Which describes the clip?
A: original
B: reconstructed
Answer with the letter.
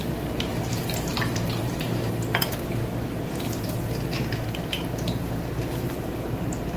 B